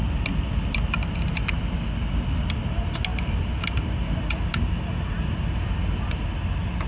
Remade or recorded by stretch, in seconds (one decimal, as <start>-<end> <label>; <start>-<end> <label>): 0.0-1.1 remade; 1.1-6.9 recorded